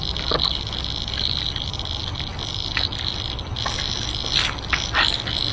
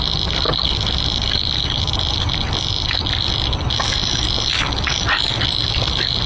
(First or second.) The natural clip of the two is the first